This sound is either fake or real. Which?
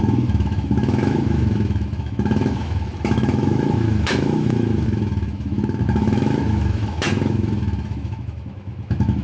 fake